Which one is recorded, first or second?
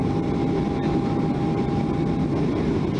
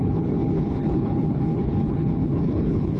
first